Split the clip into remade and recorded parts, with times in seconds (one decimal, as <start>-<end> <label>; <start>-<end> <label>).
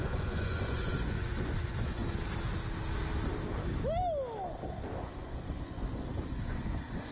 0.0-2.0 remade; 2.0-5.0 recorded; 5.0-5.8 remade; 5.8-6.3 recorded; 6.3-7.1 remade